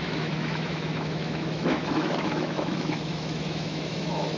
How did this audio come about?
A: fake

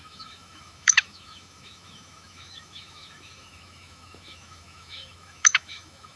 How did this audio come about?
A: fake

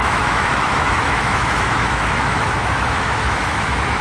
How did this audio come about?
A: fake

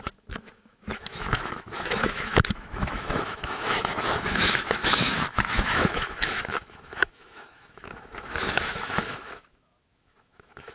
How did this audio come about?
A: fake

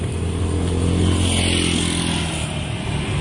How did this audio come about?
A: real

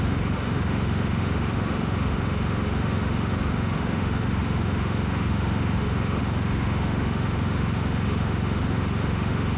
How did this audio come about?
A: fake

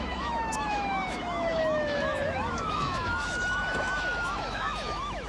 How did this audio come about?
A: fake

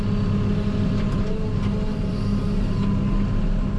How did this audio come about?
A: real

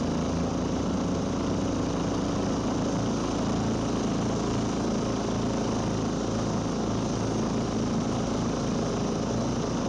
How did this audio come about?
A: real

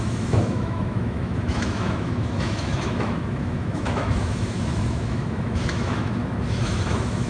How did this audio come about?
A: fake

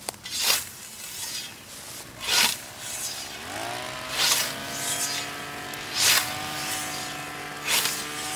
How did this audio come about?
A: real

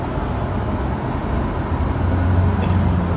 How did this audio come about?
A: real